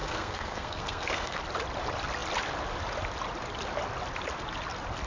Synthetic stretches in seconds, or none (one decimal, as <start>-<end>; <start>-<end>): 0.0-1.4